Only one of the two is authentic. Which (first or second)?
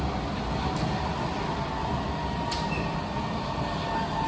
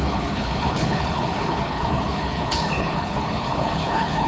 first